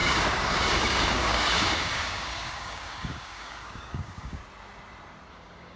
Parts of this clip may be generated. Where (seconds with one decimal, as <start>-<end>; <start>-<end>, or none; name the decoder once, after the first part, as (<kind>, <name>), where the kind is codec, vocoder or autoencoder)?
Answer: 0.0-4.4 (codec, DAC); 5.3-5.8